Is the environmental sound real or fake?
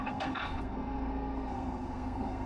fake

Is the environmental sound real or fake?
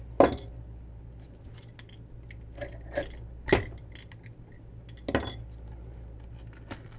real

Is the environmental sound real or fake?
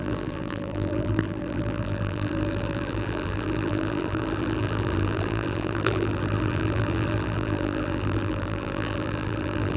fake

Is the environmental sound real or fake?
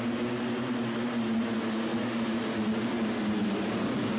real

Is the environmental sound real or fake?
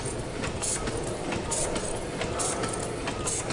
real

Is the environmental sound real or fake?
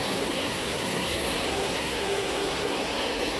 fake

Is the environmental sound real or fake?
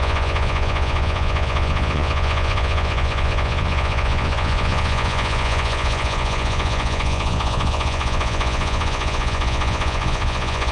fake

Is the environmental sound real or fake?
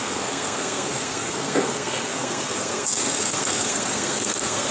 fake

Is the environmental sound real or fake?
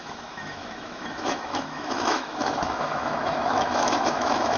fake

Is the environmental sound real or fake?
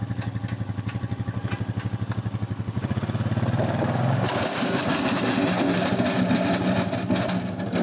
real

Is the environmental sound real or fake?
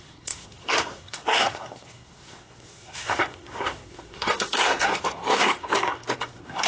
fake